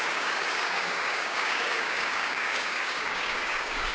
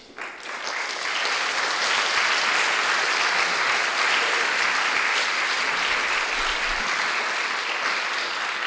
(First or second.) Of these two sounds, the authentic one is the second